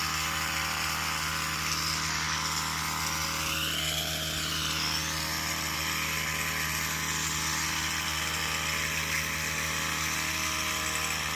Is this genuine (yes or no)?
yes